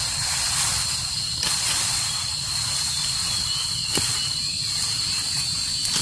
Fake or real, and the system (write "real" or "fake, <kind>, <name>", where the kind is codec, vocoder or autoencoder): real